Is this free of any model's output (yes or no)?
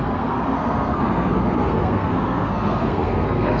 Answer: no